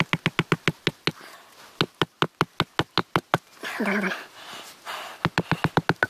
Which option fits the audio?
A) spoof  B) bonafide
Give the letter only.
B